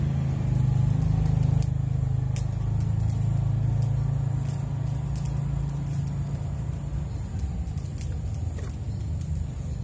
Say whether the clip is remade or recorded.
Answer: recorded